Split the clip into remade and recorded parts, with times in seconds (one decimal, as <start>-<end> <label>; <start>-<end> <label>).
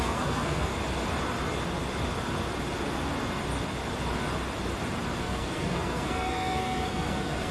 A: 0.0-0.7 remade; 0.7-5.2 recorded; 5.2-7.5 remade